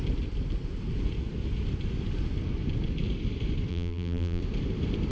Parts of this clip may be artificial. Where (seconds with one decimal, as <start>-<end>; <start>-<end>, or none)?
3.7-4.4